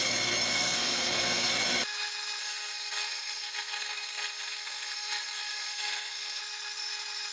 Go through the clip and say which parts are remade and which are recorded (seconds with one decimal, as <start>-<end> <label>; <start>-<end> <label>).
0.0-0.5 recorded; 0.5-1.5 remade; 1.5-2.4 recorded; 2.4-6.4 remade; 6.4-7.3 recorded